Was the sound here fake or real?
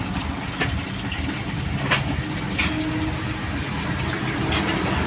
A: real